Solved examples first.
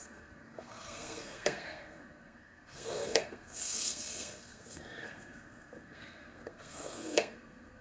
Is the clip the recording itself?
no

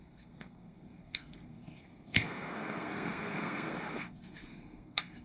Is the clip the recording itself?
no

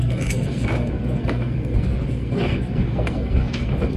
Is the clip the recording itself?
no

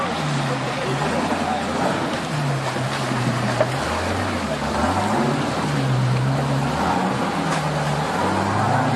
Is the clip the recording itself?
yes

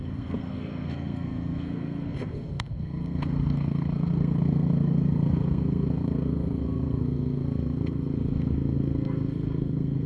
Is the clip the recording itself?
no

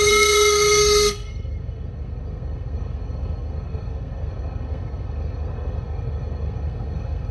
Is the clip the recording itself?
no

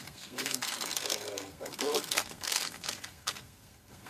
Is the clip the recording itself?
no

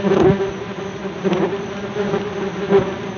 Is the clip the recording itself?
yes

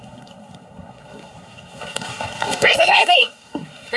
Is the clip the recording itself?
no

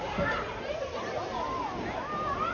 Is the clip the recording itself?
yes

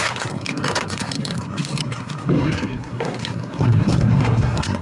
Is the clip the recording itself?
no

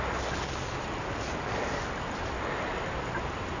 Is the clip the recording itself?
yes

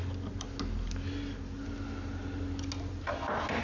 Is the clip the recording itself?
yes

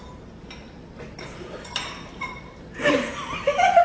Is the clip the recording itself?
yes